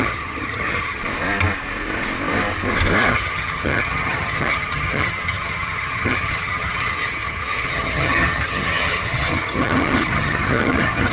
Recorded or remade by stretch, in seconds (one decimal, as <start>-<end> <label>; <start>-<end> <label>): 0.0-1.0 remade; 1.0-3.1 recorded; 3.1-11.1 remade